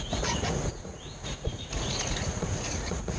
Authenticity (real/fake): fake